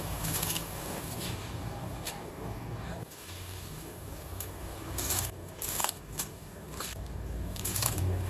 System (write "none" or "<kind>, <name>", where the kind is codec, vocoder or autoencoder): codec, DAC